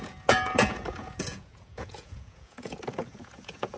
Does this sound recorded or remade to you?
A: remade